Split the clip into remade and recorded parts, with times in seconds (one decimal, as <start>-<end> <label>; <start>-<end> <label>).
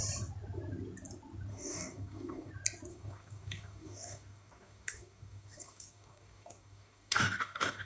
0.0-1.5 recorded; 1.5-2.5 remade; 2.5-2.9 recorded; 2.9-7.9 remade